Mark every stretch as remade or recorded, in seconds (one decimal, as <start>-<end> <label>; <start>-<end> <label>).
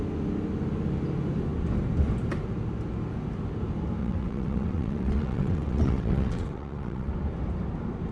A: 0.0-4.0 recorded; 4.0-7.1 remade; 7.1-8.1 recorded